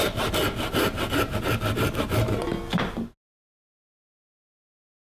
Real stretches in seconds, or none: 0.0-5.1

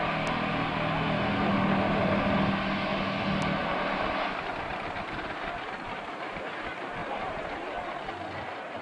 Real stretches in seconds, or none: 0.0-3.6; 4.1-4.7; 6.1-7.0; 8.1-8.8

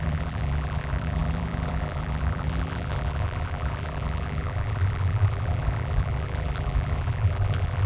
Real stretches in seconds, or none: none

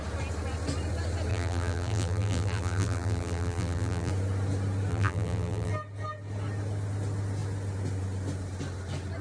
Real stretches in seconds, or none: 0.0-1.3; 4.1-4.9; 5.7-9.2

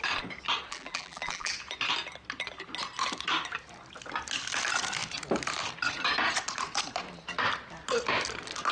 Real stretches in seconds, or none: 0.0-0.7; 1.5-8.7

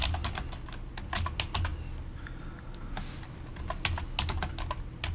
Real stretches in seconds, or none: 0.0-5.1